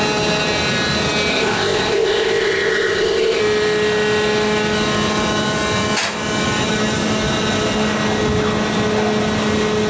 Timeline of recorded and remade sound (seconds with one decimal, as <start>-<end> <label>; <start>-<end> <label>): 0.0-1.3 recorded; 1.3-3.4 remade; 3.4-9.9 recorded